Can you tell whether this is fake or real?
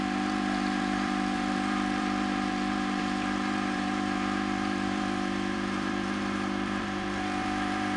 fake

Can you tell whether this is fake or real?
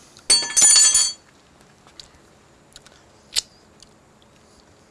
real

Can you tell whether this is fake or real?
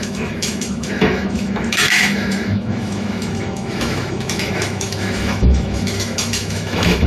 fake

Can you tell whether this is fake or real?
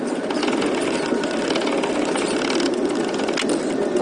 real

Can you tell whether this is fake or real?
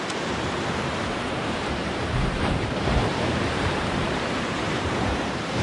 fake